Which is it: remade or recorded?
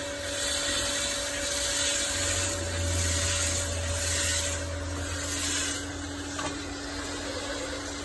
recorded